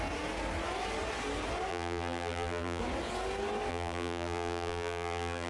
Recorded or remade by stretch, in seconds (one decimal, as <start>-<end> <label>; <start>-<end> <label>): 0.0-1.7 recorded; 1.7-2.8 remade; 2.8-3.7 recorded; 3.7-5.5 remade